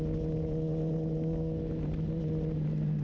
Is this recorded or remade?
recorded